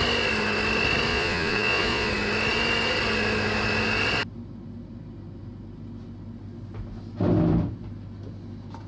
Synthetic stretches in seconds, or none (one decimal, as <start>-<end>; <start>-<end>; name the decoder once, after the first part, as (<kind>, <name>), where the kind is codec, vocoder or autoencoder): 1.1-2.1 (vocoder, Vocos)